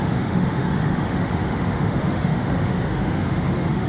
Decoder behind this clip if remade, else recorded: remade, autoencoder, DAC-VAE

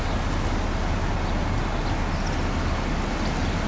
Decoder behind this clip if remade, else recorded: recorded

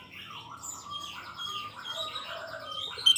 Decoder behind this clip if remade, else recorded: recorded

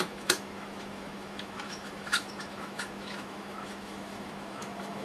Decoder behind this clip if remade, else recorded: remade, autoencoder, DAC-VAE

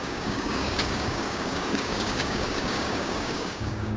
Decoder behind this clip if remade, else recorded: remade, codec, DAC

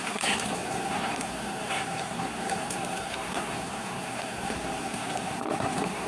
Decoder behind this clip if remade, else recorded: remade, codec, SNAC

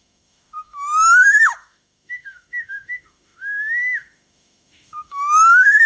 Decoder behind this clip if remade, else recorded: remade, autoencoder, DAC-VAE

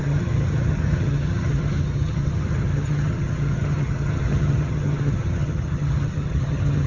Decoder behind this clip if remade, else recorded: remade, vocoder, HiFi-GAN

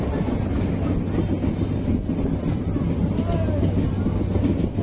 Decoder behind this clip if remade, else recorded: recorded